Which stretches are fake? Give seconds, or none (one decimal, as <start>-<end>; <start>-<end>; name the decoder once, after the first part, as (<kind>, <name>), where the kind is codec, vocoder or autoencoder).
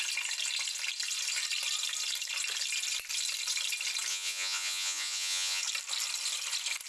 4.1-5.6 (vocoder, Vocos)